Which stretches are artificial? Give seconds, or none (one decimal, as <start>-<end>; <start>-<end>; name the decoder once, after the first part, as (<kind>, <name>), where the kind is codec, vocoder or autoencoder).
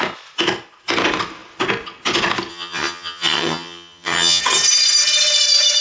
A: 2.5-4.4 (vocoder, HiFi-GAN)